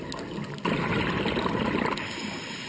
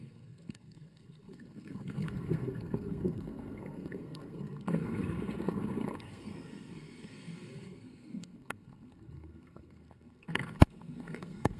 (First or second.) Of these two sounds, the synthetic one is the second